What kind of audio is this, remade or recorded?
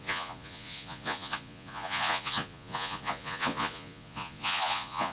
remade